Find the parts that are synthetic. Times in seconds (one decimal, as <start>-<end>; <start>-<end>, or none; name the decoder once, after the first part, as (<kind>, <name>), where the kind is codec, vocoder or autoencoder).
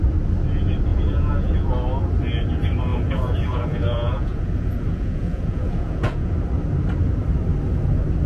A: 0.9-1.7 (vocoder, Vocos); 2.9-6.3